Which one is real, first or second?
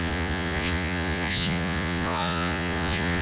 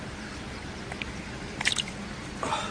second